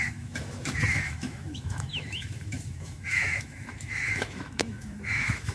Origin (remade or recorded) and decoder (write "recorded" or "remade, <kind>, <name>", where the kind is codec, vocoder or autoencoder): remade, autoencoder, DAC-VAE